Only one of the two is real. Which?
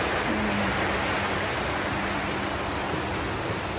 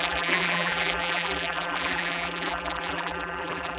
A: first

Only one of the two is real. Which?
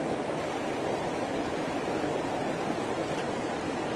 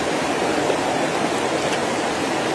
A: second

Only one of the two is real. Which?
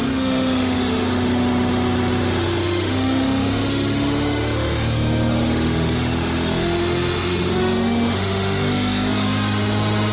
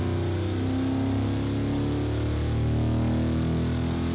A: second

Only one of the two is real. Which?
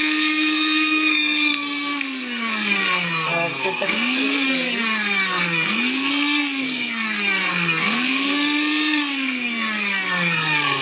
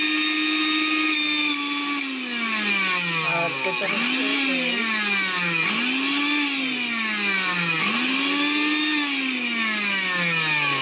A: second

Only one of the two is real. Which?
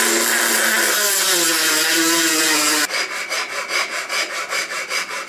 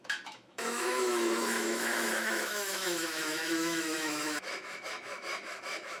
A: first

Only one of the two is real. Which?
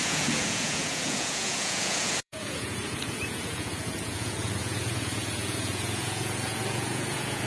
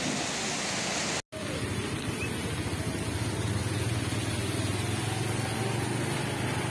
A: second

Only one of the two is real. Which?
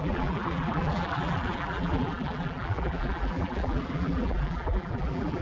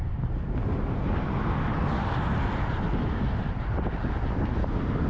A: second